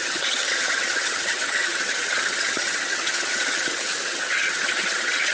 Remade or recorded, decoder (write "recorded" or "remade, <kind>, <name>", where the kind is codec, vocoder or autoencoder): remade, vocoder, HiFi-GAN